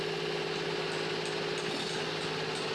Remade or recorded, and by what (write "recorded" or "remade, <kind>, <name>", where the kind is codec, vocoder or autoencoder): recorded